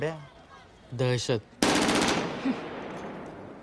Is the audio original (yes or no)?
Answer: yes